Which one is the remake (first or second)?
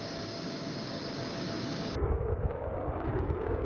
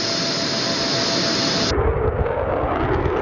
first